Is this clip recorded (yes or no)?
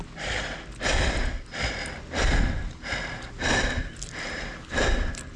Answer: yes